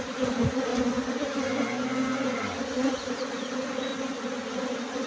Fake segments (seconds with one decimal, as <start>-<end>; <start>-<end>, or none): 0.0-0.7; 2.8-3.9